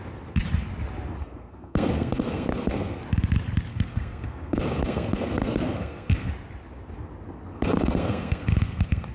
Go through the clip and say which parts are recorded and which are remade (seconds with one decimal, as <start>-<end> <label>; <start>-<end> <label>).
0.0-1.2 recorded; 1.2-3.0 remade; 3.0-3.7 recorded; 3.7-6.3 remade; 6.3-7.5 recorded; 7.5-9.1 remade